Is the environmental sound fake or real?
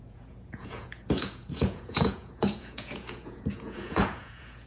fake